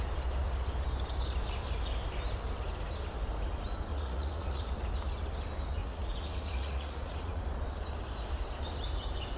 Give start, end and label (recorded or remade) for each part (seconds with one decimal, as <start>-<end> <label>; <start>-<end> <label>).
0.0-3.9 recorded; 3.9-4.7 remade; 4.7-5.8 recorded; 5.8-7.4 remade; 7.4-9.4 recorded